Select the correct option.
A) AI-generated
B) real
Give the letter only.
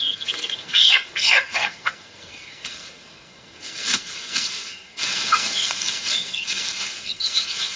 A